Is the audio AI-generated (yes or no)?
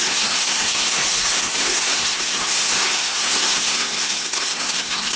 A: yes